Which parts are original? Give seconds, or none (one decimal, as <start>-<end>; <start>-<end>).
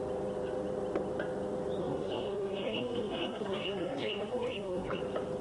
0.0-1.8; 5.0-5.4